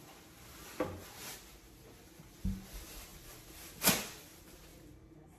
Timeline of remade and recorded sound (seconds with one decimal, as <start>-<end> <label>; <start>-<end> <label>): 0.0-5.4 recorded